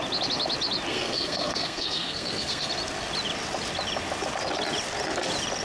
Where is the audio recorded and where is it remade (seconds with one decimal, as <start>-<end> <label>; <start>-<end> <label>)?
0.0-0.9 recorded; 0.9-2.7 remade; 2.7-5.6 recorded